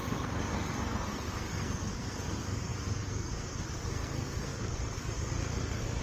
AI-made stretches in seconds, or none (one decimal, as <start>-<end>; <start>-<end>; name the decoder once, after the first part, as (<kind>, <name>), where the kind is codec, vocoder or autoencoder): 0.0-6.0 (codec, SNAC)